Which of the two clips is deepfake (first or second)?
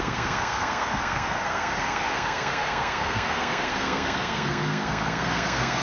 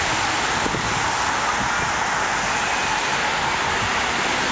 first